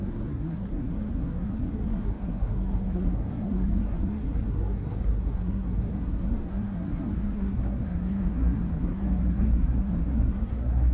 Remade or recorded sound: remade